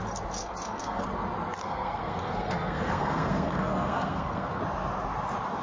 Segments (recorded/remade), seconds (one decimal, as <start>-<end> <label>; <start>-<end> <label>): 0.0-0.4 recorded; 0.4-1.1 remade; 1.1-1.6 recorded; 1.6-4.6 remade; 4.6-5.6 recorded